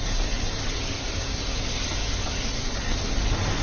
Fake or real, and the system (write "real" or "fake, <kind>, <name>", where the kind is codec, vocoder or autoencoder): real